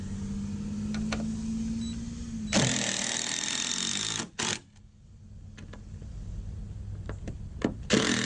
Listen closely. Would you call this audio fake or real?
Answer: real